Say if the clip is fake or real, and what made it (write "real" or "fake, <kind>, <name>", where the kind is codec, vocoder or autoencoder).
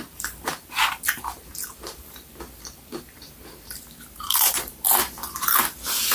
fake, vocoder, BigVGAN v2